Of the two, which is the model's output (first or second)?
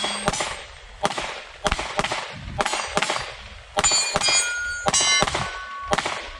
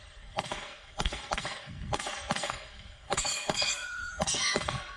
second